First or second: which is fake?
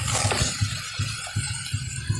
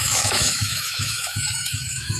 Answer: second